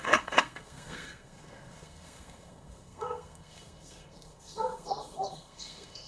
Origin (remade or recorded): remade